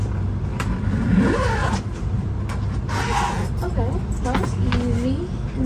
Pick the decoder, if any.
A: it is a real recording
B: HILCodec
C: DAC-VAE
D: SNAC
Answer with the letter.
A